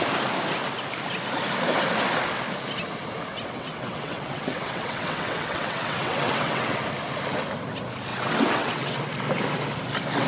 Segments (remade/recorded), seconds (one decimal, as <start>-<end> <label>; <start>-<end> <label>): 0.0-3.3 recorded; 3.3-6.8 remade; 6.8-8.1 recorded; 8.1-9.0 remade; 9.0-10.3 recorded